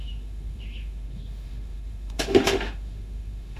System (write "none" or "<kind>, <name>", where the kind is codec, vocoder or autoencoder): autoencoder, DAC-VAE